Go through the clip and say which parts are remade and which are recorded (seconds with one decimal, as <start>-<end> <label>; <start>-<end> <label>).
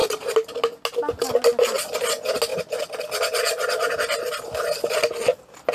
0.0-5.7 recorded